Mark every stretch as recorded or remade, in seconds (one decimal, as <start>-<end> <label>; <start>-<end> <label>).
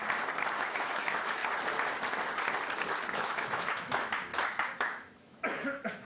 0.0-0.6 recorded; 0.6-1.4 remade; 1.4-3.1 recorded; 3.1-4.3 remade; 4.3-4.8 recorded; 4.8-6.0 remade